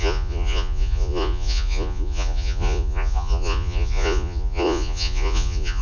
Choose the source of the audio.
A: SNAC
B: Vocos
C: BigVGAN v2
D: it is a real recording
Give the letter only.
B